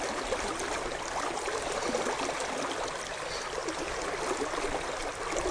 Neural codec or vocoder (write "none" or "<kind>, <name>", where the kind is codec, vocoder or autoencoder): none